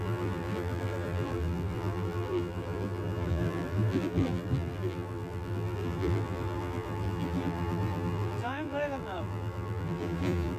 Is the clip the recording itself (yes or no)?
no